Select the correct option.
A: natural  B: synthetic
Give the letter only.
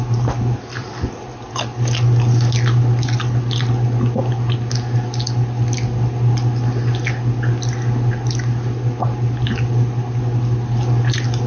A